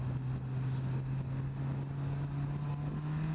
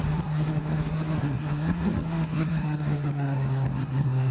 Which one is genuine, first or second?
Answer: first